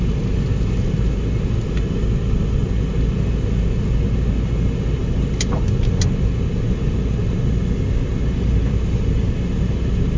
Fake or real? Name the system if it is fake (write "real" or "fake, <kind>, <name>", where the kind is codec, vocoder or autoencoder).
real